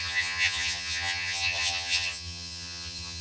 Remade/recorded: remade